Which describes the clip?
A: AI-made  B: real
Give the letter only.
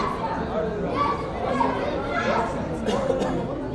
B